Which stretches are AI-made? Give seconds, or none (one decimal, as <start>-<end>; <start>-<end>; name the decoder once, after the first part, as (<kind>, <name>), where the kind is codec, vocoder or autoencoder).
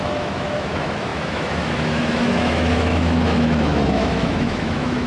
0.0-5.1 (autoencoder, DAC-VAE)